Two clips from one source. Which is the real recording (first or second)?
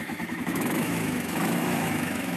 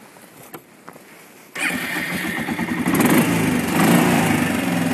second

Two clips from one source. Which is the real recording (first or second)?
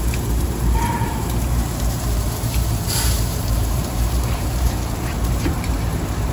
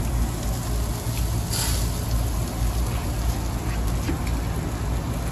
second